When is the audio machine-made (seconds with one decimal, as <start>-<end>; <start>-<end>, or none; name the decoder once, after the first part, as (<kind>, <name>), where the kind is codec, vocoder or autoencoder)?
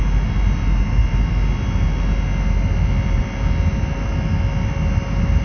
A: none